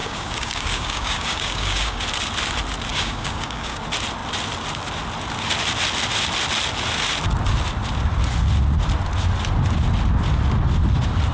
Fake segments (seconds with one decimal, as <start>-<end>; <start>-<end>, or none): 0.0-2.0; 2.9-3.8